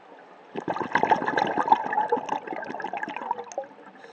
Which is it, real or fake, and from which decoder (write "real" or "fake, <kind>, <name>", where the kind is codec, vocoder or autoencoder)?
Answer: real